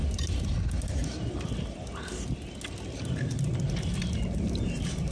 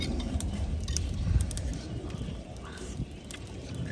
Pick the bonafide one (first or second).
first